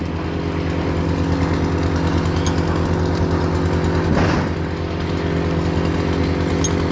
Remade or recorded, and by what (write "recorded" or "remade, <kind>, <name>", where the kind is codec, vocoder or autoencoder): recorded